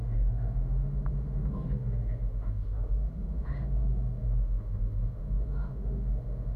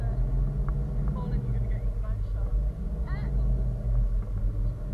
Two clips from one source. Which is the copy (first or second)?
first